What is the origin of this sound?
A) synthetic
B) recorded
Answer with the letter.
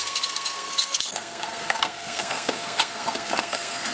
A